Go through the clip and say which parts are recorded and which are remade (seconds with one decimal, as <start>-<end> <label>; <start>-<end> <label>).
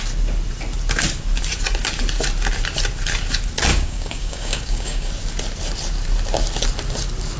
0.0-3.7 recorded; 3.7-5.1 remade; 5.1-7.4 recorded